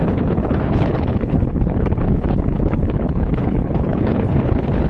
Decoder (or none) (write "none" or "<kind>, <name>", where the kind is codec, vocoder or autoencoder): codec, HILCodec